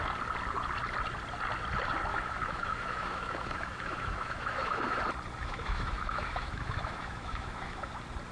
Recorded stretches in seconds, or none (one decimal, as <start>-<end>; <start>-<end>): 0.0-2.1; 5.0-5.4; 7.9-8.3